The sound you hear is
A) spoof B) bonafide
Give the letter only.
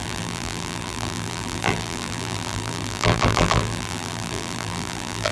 A